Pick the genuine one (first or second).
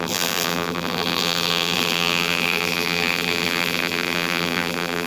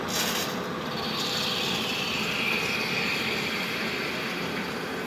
second